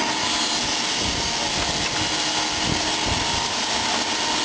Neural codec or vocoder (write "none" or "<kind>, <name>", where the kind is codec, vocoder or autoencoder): none